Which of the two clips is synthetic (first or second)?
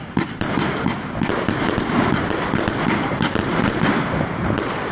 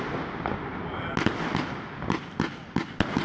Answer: first